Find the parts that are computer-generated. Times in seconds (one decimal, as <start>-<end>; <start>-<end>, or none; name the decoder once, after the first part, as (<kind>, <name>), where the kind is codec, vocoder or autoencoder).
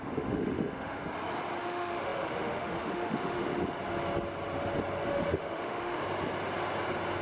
0.0-1.0 (autoencoder, DAC-VAE); 1.6-3.4; 5.1-6.0